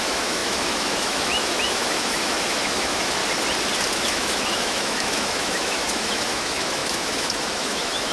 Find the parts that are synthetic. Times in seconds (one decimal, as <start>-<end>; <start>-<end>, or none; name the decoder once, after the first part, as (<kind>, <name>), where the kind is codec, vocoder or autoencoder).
0.0-3.2 (autoencoder, DAC-VAE); 3.9-8.1